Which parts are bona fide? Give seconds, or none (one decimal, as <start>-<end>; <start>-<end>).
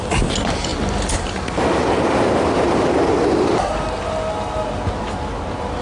0.0-5.8